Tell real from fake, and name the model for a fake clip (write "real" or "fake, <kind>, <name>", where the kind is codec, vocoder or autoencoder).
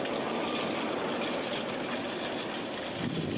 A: real